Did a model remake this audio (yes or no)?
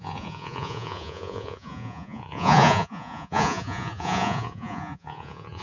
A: yes